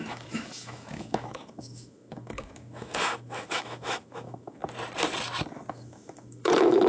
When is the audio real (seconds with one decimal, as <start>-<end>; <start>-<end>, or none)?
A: 4.6-5.7